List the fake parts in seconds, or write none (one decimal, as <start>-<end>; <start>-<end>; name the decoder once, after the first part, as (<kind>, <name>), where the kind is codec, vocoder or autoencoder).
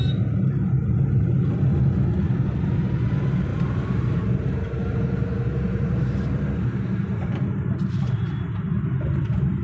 3.5-8.3 (vocoder, BigVGAN v2)